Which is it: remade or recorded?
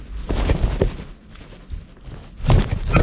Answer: recorded